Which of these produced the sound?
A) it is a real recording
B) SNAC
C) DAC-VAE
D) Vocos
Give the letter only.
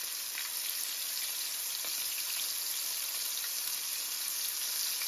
A